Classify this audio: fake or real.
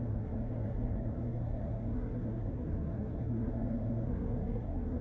fake